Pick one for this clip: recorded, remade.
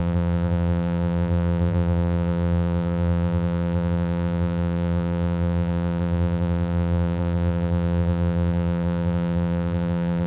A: remade